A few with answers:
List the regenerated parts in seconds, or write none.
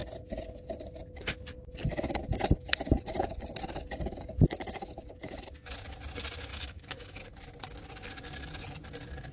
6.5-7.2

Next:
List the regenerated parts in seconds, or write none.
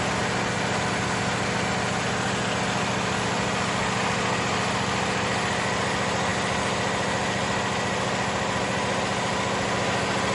none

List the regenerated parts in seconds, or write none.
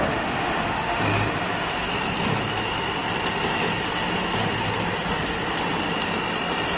0.0-1.0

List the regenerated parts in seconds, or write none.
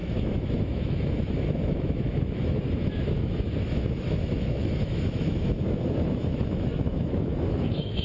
0.0-8.0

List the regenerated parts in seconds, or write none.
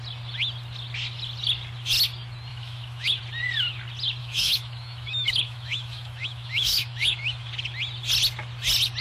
2.5-3.2; 4.2-7.5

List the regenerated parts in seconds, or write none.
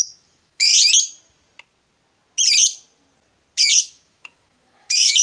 0.0-0.7; 3.8-5.2